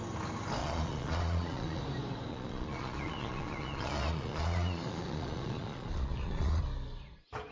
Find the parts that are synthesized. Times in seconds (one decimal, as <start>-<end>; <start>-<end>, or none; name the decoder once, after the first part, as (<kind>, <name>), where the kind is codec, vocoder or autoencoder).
0.6-1.8 (vocoder, Vocos); 2.3-6.6